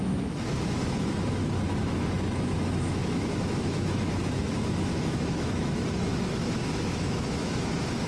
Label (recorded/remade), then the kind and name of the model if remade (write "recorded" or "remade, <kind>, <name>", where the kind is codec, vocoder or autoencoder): remade, autoencoder, DAC-VAE